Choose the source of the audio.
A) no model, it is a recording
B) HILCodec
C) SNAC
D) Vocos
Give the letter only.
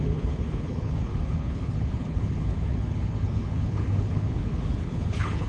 B